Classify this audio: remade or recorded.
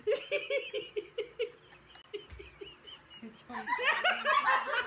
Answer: recorded